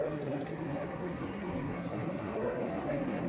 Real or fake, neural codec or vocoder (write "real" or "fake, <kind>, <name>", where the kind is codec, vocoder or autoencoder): fake, codec, SNAC